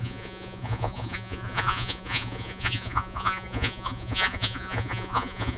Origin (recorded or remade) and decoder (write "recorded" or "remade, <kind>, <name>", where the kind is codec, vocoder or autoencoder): remade, vocoder, Vocos